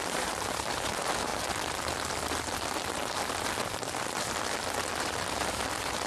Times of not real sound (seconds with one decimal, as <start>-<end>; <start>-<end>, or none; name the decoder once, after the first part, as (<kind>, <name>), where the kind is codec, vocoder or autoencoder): 0.0-1.3 (vocoder, BigVGAN v2); 5.0-6.1